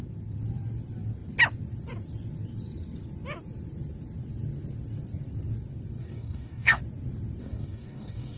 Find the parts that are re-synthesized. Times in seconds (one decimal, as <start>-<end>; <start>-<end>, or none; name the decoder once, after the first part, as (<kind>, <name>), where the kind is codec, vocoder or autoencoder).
6.0-6.8 (codec, DAC); 7.4-8.4